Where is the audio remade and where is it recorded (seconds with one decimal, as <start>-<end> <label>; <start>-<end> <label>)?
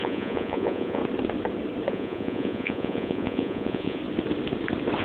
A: 0.0-1.0 remade; 1.0-1.9 recorded; 1.9-4.0 remade; 4.0-5.0 recorded